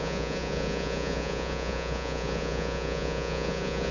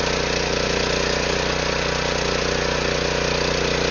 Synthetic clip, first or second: first